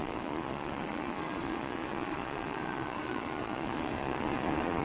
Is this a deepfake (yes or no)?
yes